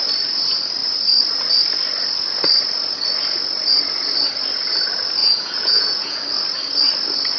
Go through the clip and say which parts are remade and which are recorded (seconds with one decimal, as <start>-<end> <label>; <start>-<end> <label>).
0.0-5.2 recorded; 5.2-6.2 remade; 6.2-7.4 recorded